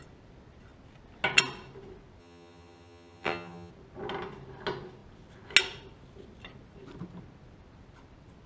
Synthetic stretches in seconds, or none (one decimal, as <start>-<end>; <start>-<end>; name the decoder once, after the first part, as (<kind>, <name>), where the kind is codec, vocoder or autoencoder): 2.2-3.7 (vocoder, HiFi-GAN)